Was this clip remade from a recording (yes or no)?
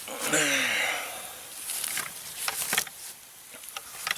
no